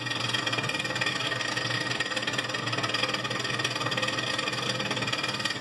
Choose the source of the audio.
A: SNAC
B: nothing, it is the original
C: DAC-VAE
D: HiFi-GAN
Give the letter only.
B